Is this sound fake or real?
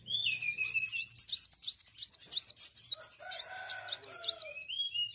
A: real